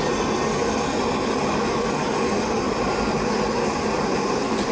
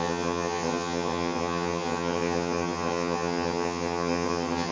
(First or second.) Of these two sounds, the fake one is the second